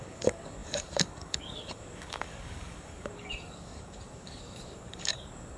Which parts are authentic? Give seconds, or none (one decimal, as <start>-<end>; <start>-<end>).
none